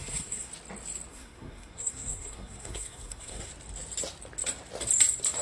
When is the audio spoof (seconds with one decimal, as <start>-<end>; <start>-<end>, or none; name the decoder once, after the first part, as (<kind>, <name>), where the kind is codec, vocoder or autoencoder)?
0.0-0.5 (codec, SNAC); 1.1-3.5